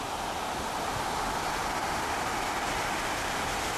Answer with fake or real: real